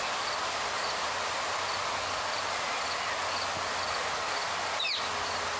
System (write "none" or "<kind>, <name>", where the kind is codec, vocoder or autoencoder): none